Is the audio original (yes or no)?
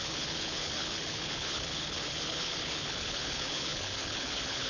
no